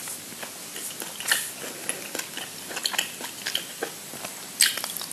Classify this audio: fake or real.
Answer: real